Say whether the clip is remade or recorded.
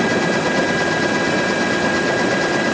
recorded